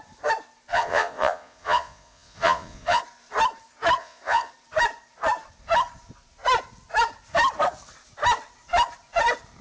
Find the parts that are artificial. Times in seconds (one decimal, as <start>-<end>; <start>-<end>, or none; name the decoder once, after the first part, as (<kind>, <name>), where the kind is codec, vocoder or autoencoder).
0.7-3.0 (vocoder, Vocos); 4.0-4.5